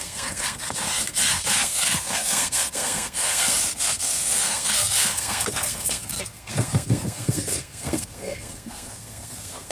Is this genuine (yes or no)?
no